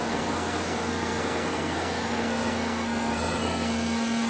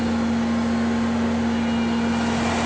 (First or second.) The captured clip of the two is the second